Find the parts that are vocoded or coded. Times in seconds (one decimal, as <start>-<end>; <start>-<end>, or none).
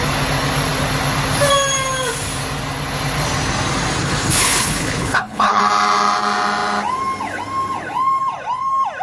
4.0-5.6